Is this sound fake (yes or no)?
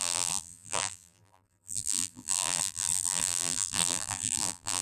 yes